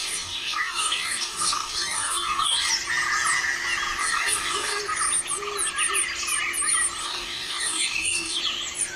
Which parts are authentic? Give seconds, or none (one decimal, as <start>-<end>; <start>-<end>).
2.7-4.0; 4.8-7.0; 8.4-9.0